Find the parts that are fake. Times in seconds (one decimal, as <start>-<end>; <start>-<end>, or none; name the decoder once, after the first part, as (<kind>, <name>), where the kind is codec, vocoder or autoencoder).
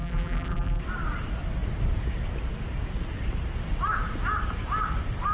0.0-0.8 (vocoder, BigVGAN v2)